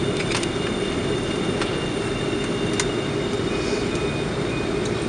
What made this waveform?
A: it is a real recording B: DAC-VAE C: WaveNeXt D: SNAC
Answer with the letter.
A